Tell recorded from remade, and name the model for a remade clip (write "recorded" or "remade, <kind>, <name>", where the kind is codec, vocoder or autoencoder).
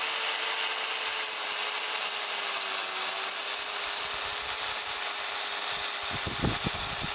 recorded